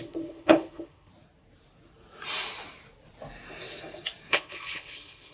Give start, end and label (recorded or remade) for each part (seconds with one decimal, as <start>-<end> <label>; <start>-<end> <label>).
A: 0.0-1.1 remade; 1.1-4.3 recorded; 4.3-5.3 remade